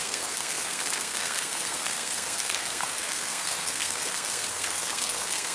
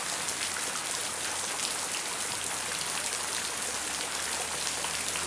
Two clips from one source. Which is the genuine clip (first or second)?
second